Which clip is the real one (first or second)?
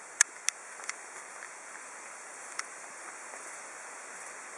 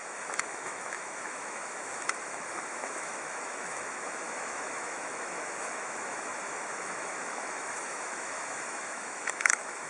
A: first